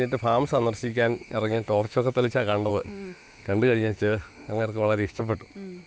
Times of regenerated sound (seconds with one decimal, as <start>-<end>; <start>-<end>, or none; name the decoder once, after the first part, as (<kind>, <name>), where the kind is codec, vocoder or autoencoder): 0.9-2.3 (autoencoder, DAC-VAE); 2.7-5.2